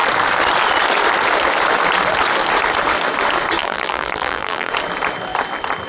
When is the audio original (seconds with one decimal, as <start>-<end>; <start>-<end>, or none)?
0.0-3.6; 4.7-5.9